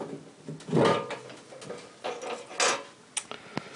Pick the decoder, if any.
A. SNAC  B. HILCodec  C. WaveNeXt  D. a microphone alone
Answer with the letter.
D